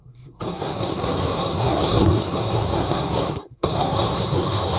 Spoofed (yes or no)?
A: yes